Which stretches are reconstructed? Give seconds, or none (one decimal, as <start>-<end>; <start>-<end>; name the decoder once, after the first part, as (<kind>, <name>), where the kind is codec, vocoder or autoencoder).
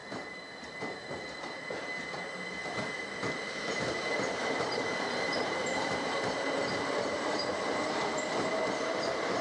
3.9-8.1 (vocoder, BigVGAN v2); 8.7-9.4